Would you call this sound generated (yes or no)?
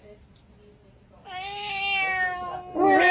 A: no